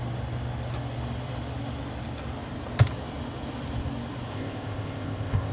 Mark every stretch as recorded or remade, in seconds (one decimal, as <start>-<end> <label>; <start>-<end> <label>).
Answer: 0.0-4.3 recorded; 4.3-5.5 remade